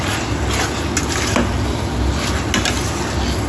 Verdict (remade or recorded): recorded